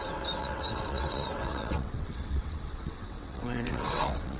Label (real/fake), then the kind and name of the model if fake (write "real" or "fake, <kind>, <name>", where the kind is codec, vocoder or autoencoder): fake, vocoder, WaveNeXt